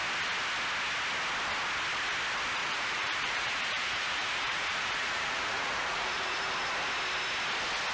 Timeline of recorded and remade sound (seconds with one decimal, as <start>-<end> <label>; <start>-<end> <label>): 0.0-2.6 recorded; 2.6-6.5 remade; 6.5-7.9 recorded